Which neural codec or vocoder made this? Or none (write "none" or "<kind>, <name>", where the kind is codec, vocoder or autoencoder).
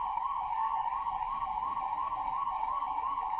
codec, DAC